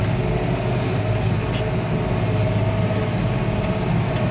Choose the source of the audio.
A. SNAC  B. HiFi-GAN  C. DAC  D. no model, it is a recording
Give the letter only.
D